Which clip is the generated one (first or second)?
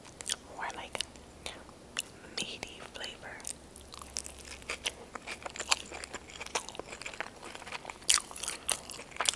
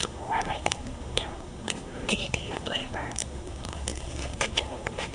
second